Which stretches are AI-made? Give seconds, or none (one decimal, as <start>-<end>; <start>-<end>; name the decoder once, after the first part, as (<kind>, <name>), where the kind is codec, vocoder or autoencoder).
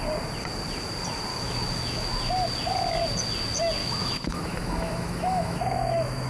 1.3-2.1 (autoencoder, DAC-VAE); 3.8-6.3